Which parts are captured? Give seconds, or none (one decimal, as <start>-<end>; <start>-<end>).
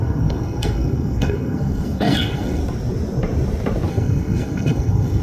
2.6-3.9